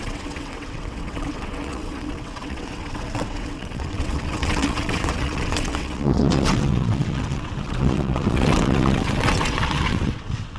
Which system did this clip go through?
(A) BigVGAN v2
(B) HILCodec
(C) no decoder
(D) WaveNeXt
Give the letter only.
D